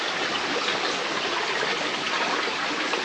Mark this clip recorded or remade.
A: recorded